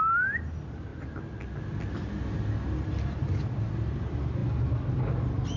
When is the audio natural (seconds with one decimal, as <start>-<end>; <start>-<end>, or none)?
0.0-5.6